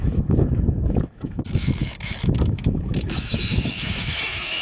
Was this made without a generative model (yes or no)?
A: no